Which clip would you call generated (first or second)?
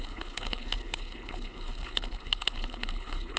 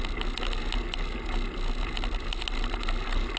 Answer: first